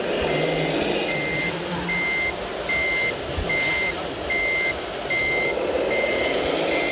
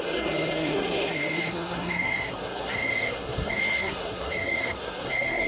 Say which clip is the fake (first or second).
second